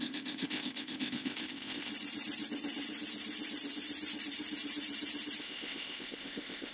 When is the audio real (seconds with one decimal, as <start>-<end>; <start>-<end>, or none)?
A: 1.9-5.4

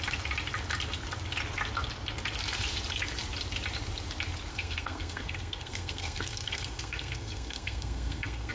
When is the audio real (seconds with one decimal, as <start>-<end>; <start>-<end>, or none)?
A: 0.0-4.5